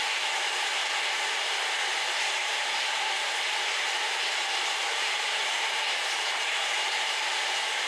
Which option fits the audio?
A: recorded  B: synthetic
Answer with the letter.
B